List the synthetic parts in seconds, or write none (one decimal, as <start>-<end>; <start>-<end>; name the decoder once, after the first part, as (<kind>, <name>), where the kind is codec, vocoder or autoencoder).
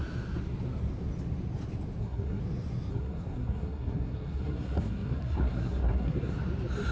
2.0-2.4 (codec, SNAC); 2.9-6.3